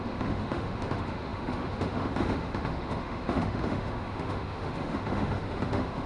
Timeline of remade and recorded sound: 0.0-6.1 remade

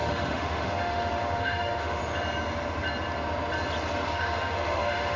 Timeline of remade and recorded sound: 0.0-2.0 remade; 2.0-4.1 recorded; 4.1-5.2 remade

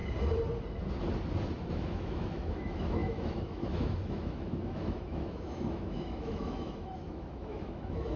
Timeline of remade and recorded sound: 0.0-1.7 recorded; 1.7-8.2 remade

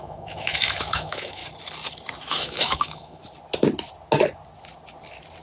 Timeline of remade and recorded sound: 0.0-1.4 remade; 1.4-2.3 recorded; 2.3-3.2 remade; 3.2-5.4 recorded

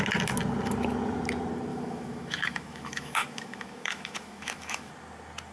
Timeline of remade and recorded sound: 0.0-1.7 recorded; 1.7-4.9 remade; 4.9-5.5 recorded

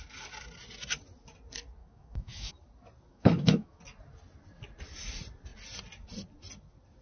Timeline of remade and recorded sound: 0.0-1.8 recorded; 1.8-2.5 remade; 2.5-3.1 recorded; 3.1-3.8 remade; 3.8-7.0 recorded